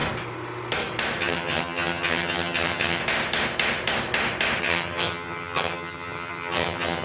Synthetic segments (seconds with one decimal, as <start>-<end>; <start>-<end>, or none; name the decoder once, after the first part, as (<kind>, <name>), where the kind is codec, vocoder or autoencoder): 1.2-3.0 (vocoder, HiFi-GAN); 4.6-7.0

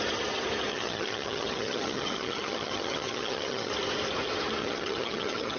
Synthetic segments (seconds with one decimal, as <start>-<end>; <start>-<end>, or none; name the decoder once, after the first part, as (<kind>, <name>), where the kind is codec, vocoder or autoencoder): 0.7-3.7 (vocoder, HiFi-GAN); 4.6-5.6